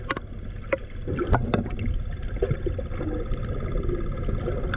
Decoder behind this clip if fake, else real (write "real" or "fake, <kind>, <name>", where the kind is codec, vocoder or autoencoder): real